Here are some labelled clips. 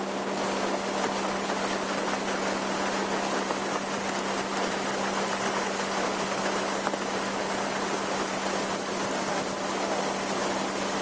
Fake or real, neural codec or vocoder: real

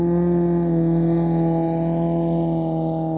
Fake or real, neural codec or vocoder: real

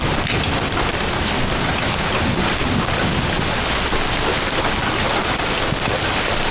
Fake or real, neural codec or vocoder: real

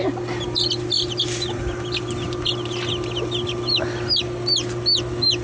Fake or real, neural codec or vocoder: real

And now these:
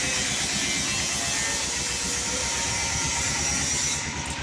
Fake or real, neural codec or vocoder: real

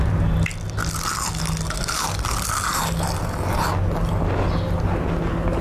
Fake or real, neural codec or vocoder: real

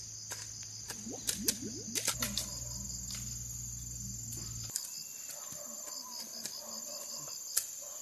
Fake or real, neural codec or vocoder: real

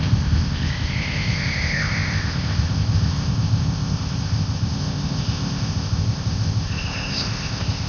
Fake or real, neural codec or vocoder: fake, codec, ZipCodec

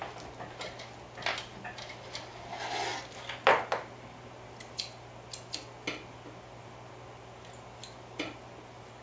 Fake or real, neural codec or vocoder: real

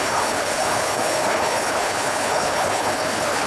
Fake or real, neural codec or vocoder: fake, codec, HILCodec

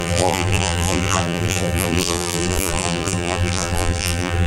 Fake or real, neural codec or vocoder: fake, vocoder, BigVGAN v2